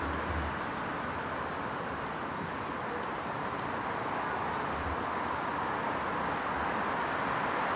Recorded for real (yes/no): yes